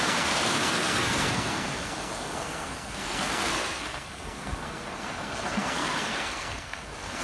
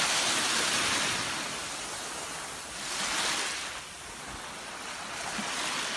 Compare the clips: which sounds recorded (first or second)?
second